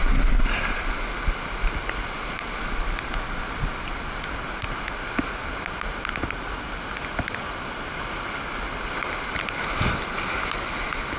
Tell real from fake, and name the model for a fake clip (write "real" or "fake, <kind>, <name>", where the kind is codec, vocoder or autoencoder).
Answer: real